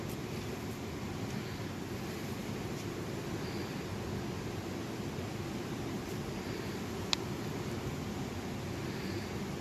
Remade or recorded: recorded